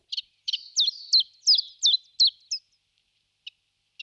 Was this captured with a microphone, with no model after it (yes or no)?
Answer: yes